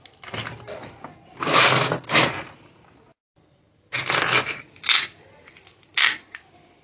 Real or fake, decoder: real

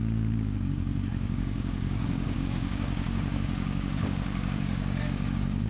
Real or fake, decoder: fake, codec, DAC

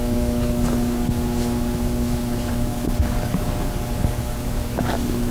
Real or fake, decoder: fake, codec, DAC